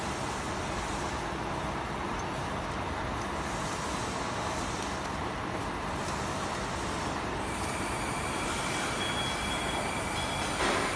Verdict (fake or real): real